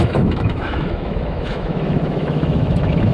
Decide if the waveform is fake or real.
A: fake